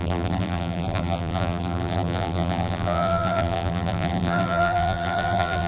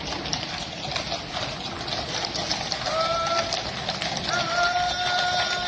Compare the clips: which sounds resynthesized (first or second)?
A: first